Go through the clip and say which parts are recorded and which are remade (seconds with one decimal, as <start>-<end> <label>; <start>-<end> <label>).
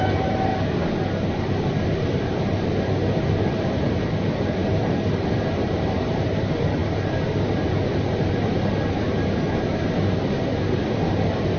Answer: 0.0-0.5 remade; 0.5-1.9 recorded; 1.9-6.8 remade; 6.8-9.5 recorded; 9.5-11.6 remade